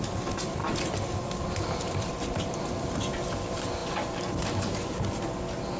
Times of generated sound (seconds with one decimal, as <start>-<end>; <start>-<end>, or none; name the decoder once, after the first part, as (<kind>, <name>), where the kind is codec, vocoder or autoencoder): none